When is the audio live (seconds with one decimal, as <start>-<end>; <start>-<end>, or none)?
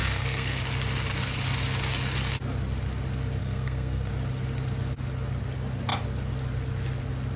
0.6-3.4; 4.1-7.4